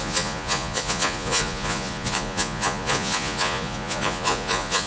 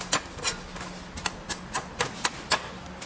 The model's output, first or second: first